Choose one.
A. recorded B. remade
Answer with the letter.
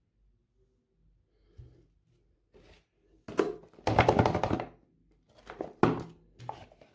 A